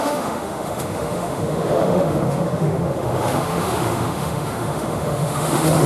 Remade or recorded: remade